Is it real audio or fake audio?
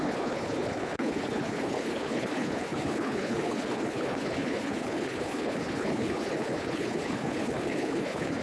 fake